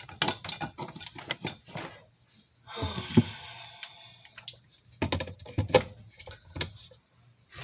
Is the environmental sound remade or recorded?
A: recorded